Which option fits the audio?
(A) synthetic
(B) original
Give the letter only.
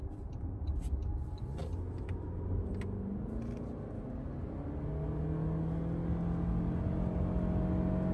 B